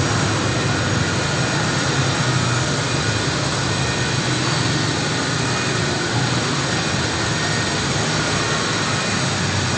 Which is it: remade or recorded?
recorded